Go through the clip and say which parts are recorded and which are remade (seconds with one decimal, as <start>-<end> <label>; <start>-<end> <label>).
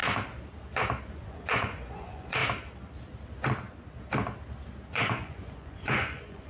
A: 0.0-1.1 recorded; 1.1-2.4 remade; 2.4-4.9 recorded; 4.9-6.5 remade